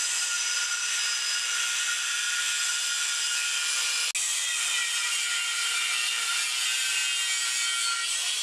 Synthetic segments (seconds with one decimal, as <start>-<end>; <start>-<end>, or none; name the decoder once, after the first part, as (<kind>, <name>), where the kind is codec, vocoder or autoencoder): 0.0-1.0 (vocoder, BigVGAN v2); 4.8-6.3